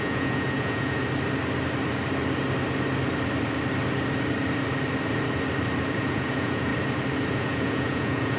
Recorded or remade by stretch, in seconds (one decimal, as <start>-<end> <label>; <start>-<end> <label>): 0.0-1.0 remade; 1.0-6.0 recorded; 6.0-6.7 remade; 6.7-7.3 recorded; 7.3-8.4 remade